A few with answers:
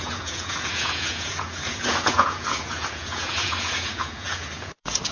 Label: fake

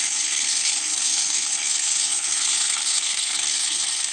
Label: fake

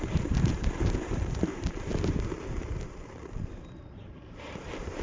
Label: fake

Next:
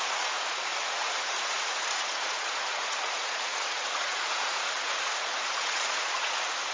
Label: fake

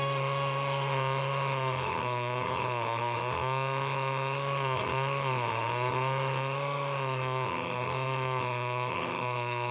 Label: fake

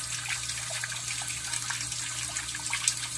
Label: real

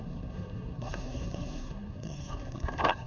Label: fake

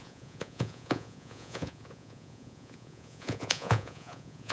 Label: fake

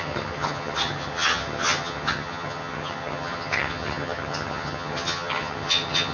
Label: fake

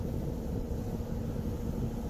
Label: real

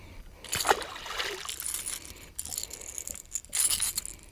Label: real